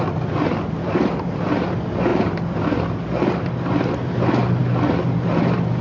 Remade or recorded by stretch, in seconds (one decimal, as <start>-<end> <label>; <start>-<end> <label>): 0.0-5.8 recorded